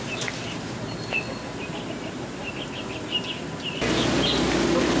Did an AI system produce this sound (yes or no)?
no